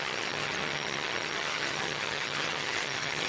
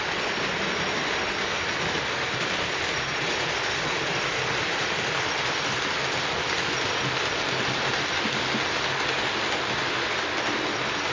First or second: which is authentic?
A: second